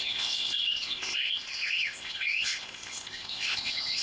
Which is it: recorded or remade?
remade